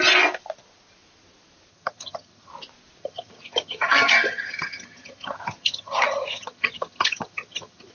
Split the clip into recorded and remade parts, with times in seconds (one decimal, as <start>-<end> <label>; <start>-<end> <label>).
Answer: 0.0-1.7 recorded; 1.7-2.5 remade; 2.5-3.0 recorded; 3.0-7.9 remade